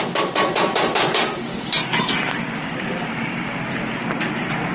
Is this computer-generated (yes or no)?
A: no